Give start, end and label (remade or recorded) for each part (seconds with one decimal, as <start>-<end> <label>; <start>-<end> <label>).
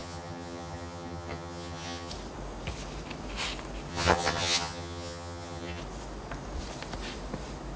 0.0-2.1 remade; 2.1-3.9 recorded; 3.9-5.8 remade; 5.8-7.8 recorded